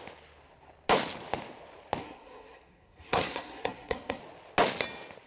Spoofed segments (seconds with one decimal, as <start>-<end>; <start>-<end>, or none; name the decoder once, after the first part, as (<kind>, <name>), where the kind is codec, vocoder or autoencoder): 2.0-4.2 (codec, SNAC)